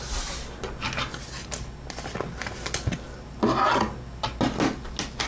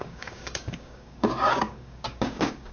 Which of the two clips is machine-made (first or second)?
second